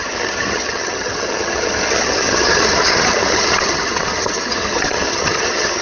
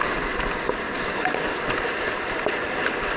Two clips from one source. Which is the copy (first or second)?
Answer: first